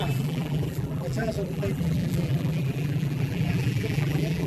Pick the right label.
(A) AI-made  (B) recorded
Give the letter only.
A